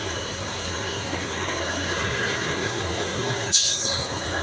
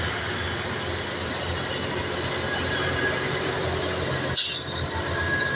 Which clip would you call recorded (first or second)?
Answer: second